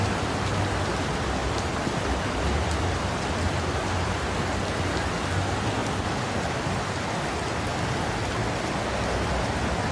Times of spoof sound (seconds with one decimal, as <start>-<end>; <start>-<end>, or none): 1.4-4.1